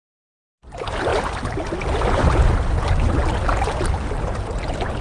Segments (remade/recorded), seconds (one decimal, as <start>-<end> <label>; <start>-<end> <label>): 0.0-5.0 recorded